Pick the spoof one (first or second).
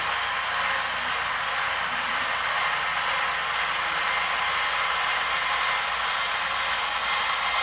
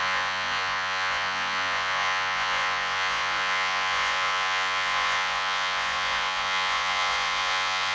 second